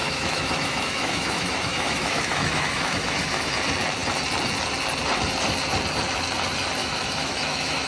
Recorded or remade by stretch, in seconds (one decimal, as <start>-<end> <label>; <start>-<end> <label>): 0.0-3.5 remade; 3.5-6.8 recorded; 6.8-7.9 remade